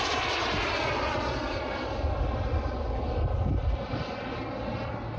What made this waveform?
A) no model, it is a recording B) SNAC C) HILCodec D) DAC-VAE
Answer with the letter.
A